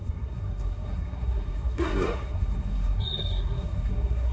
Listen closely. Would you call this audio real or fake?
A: fake